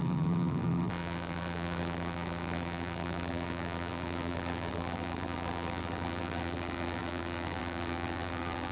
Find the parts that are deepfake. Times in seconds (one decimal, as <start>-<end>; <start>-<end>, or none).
0.0-8.7